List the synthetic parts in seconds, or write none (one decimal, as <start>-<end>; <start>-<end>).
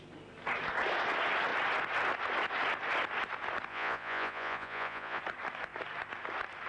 3.7-5.2